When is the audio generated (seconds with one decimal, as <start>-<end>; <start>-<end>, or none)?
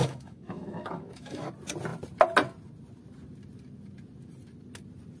0.0-1.5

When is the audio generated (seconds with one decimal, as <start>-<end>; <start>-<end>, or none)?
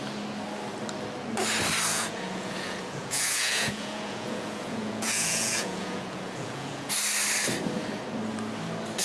1.9-6.9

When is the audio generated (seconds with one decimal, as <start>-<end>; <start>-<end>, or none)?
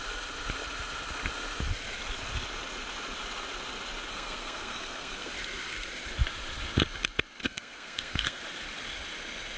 4.1-5.3; 7.4-8.4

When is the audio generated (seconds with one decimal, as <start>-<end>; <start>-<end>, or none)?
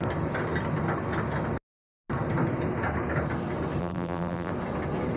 3.8-4.5